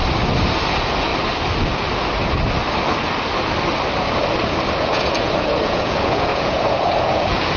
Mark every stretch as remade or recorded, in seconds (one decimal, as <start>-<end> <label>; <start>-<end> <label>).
0.0-0.7 recorded; 0.7-1.1 remade; 1.1-4.8 recorded; 4.8-7.6 remade